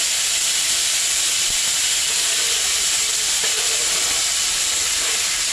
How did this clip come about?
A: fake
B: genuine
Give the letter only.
A